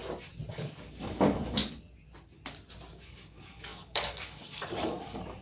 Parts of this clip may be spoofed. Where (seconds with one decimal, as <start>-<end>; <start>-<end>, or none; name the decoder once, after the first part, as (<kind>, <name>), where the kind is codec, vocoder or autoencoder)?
0.5-1.6 (codec, DAC); 2.9-5.4